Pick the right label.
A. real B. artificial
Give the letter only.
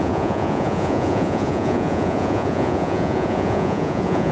B